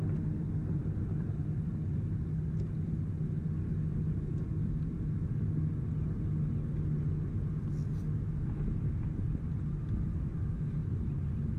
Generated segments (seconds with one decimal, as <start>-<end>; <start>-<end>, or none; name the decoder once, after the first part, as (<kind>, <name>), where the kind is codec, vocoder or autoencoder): 10.8-11.6 (vocoder, BigVGAN v2)